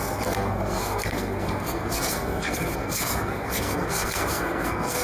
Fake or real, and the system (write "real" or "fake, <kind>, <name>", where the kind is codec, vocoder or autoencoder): fake, codec, SNAC